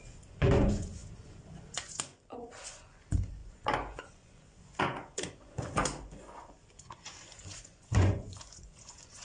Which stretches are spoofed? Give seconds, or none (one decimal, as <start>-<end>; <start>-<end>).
0.0-9.2